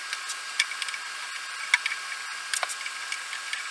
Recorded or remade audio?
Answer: recorded